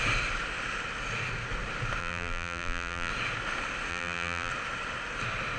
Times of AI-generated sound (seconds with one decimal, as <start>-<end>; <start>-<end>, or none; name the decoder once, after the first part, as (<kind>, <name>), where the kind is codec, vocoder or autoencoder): 2.0-3.1 (vocoder, BigVGAN v2); 3.9-4.5